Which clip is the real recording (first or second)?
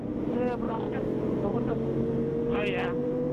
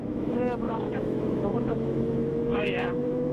first